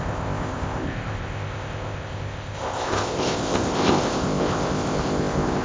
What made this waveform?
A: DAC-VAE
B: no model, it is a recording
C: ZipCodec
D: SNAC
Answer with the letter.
C